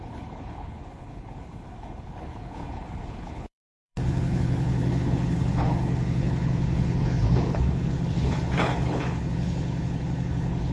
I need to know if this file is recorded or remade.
remade